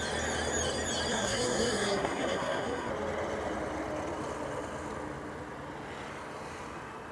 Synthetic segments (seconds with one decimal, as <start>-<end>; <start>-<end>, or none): 1.1-2.9